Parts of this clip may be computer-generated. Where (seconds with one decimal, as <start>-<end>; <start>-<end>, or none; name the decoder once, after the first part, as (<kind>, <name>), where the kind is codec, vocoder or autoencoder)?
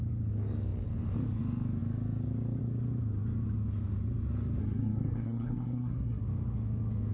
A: 4.6-6.2 (codec, SNAC)